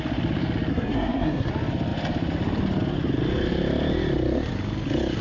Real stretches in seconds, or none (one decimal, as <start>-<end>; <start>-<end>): 0.0-0.7; 1.5-5.2